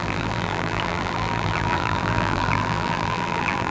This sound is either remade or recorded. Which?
remade